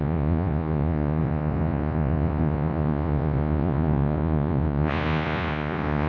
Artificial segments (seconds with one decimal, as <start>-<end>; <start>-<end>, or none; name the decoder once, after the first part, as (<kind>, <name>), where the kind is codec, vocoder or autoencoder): 0.0-6.1 (vocoder, Vocos)